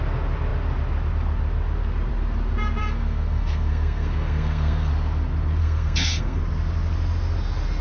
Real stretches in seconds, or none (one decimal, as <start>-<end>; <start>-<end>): 0.0-2.8; 4.9-5.6; 6.4-7.8